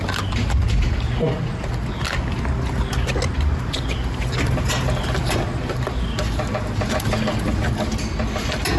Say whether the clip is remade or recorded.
recorded